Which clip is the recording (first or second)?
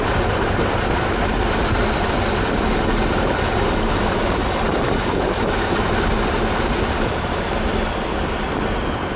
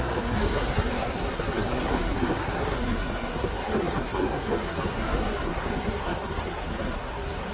first